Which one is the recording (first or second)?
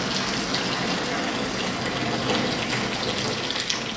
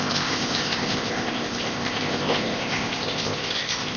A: first